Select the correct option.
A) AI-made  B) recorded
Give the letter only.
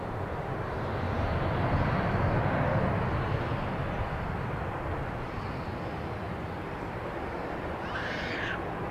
B